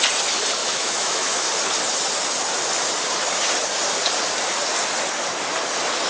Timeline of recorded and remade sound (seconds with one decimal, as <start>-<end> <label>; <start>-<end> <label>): 0.0-0.6 recorded; 0.6-1.5 remade; 1.5-6.1 recorded